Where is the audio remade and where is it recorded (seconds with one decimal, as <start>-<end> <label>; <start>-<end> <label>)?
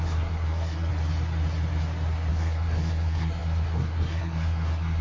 0.0-0.9 remade; 0.9-2.3 recorded; 2.3-5.0 remade